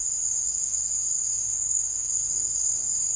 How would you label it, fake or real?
fake